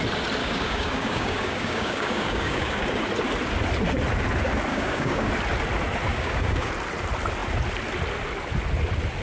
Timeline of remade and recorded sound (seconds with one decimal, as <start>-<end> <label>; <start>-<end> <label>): 0.0-0.4 recorded; 0.4-3.0 remade; 3.0-4.7 recorded; 4.7-5.3 remade; 5.3-6.1 recorded; 6.1-6.7 remade; 6.7-9.2 recorded